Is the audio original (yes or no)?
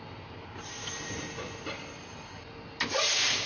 yes